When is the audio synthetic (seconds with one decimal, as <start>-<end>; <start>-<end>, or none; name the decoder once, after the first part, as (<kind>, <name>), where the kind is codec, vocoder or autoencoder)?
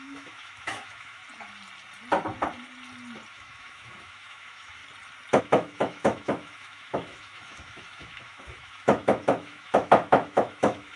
0.0-1.2 (autoencoder, DAC-VAE); 3.3-4.8; 5.4-11.0